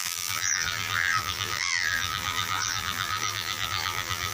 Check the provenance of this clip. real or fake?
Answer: fake